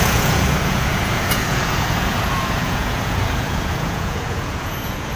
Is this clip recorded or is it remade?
remade